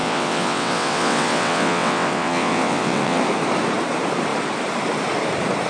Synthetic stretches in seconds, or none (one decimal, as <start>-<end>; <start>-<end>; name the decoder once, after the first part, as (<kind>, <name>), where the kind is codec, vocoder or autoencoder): 0.0-3.2 (vocoder, WaveNeXt)